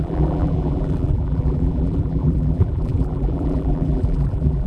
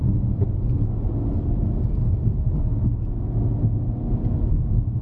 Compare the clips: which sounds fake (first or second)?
first